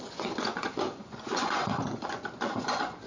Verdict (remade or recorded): remade